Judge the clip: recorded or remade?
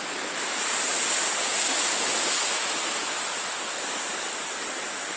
recorded